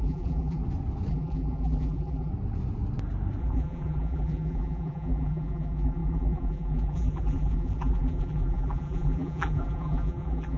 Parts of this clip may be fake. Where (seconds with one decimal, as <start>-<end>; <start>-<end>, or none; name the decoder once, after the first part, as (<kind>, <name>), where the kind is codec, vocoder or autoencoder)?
0.0-0.6 (vocoder, BigVGAN v2); 1.1-2.3; 3.4-10.6

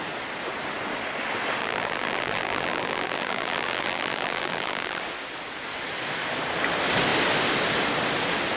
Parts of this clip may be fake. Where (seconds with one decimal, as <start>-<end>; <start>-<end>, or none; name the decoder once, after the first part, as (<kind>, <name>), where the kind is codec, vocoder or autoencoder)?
1.6-5.0 (vocoder, BigVGAN v2)

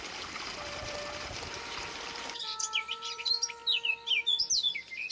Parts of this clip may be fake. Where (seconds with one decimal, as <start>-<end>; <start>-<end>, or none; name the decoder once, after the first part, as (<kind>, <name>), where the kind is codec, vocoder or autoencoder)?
0.0-3.6 (vocoder, BigVGAN v2)

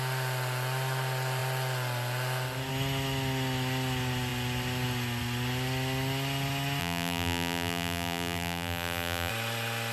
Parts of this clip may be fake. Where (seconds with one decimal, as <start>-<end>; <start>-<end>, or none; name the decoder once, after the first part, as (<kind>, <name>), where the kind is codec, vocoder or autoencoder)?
6.8-9.3 (vocoder, BigVGAN v2)

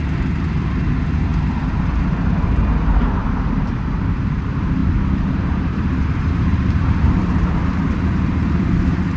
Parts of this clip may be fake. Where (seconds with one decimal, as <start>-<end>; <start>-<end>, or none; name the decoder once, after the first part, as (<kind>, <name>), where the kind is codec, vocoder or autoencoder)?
0.0-4.8 (vocoder, BigVGAN v2); 5.3-9.2

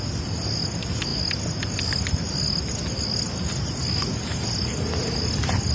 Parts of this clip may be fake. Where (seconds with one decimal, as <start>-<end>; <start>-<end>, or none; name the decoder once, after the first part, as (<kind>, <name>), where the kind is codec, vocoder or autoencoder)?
none

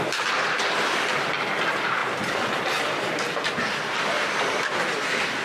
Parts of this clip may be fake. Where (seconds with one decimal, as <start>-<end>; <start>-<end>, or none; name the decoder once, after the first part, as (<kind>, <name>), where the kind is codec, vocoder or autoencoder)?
2.0-5.4 (vocoder, BigVGAN v2)

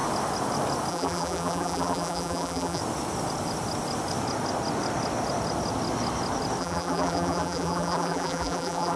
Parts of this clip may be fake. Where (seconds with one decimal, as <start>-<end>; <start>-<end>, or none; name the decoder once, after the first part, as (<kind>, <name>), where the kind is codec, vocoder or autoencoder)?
0.9-2.8 (vocoder, BigVGAN v2); 6.6-9.0